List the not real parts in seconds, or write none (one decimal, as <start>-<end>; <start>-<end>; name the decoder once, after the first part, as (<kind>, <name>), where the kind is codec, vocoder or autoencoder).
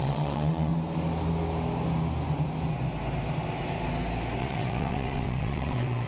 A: 0.0-0.7 (vocoder, WaveNeXt); 4.4-6.1